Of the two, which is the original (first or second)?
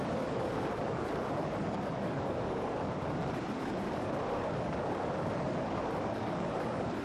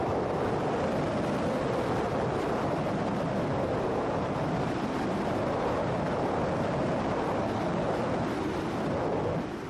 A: second